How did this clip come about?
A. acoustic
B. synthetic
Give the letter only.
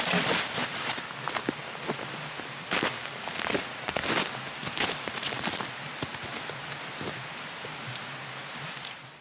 A